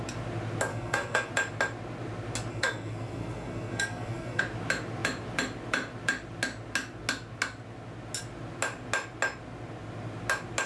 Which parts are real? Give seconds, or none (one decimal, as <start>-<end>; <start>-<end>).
0.0-0.7; 1.3-2.5; 4.4-10.7